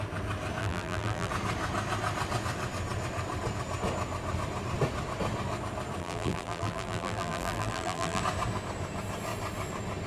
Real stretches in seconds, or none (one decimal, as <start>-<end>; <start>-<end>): 0.0-0.6; 1.3-6.0; 8.2-10.1